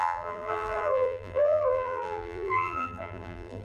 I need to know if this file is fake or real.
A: fake